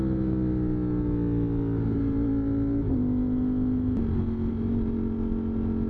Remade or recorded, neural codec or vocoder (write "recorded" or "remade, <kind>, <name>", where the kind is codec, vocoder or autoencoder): recorded